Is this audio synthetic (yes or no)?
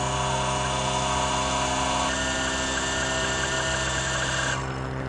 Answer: no